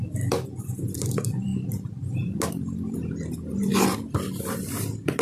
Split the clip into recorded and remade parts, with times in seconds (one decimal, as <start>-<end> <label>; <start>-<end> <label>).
0.0-1.5 remade; 1.5-2.5 recorded; 2.5-3.7 remade; 3.7-5.2 recorded